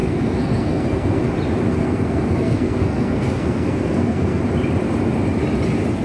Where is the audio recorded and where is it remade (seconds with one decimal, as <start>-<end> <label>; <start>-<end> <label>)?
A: 0.0-1.2 remade; 1.2-1.7 recorded; 1.7-4.4 remade; 4.4-6.0 recorded